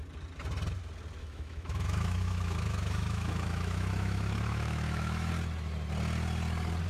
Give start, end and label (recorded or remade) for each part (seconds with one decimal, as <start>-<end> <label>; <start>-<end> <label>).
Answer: 0.0-1.2 recorded; 1.2-5.3 remade; 5.3-6.9 recorded